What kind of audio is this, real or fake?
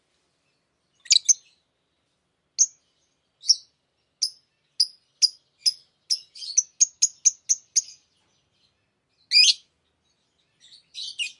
real